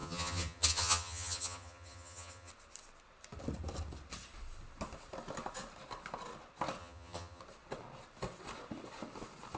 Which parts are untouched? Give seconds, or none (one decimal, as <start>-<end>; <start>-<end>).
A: 2.5-6.8; 7.4-9.6